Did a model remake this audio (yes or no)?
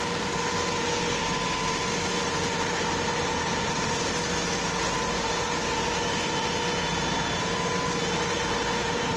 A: no